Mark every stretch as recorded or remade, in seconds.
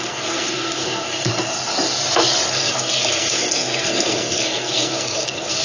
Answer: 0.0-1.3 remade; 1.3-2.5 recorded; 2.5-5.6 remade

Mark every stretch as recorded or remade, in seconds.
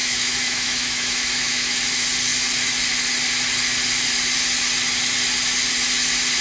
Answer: 0.0-1.8 remade; 1.8-6.4 recorded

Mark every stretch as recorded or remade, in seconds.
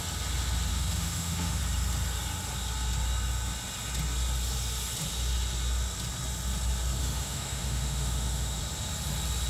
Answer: 0.0-0.7 recorded; 0.7-1.6 remade; 1.6-7.0 recorded; 7.0-8.6 remade; 8.6-9.5 recorded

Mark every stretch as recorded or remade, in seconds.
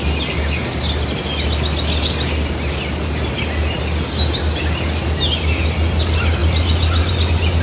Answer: 0.0-7.6 recorded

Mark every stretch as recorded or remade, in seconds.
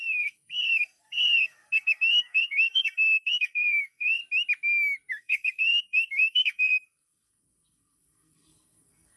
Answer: 0.0-4.2 remade; 4.2-5.1 recorded; 5.1-9.2 remade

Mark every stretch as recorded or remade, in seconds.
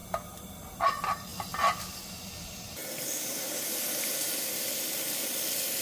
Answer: 0.0-5.8 recorded